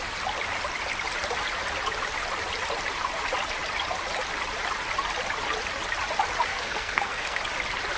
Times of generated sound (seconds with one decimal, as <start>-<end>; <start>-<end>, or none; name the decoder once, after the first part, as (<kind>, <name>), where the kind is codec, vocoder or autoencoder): 6.5-7.4 (codec, SNAC)